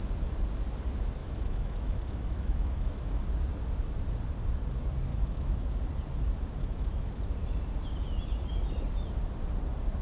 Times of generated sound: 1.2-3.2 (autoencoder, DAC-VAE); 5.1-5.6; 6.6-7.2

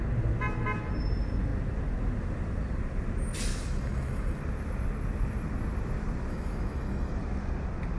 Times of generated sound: 3.5-4.4 (autoencoder, DAC-VAE); 6.3-7.5

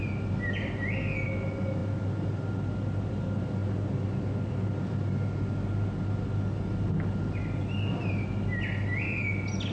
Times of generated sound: none

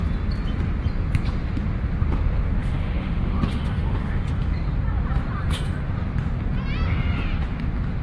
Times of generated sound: 2.6-4.3 (autoencoder, DAC-VAE)

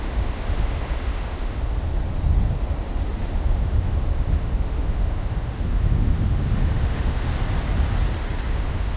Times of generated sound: 0.0-1.9 (autoencoder, DAC-VAE); 3.2-7.3; 8.5-9.0

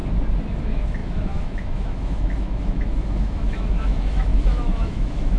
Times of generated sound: 0.6-5.4 (autoencoder, DAC-VAE)